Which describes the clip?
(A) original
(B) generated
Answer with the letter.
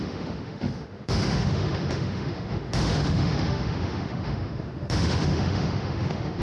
B